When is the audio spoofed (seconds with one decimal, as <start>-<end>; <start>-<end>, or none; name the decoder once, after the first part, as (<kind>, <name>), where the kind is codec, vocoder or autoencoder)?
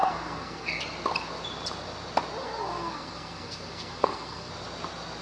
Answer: 0.0-0.8 (codec, SNAC); 2.4-4.5